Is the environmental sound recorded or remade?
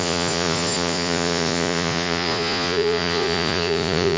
remade